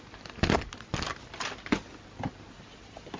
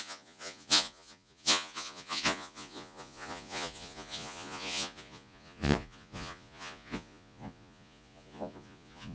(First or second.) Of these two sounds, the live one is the first